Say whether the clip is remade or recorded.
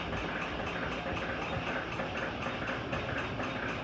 recorded